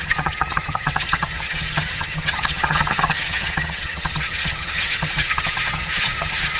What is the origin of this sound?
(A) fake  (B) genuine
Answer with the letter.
A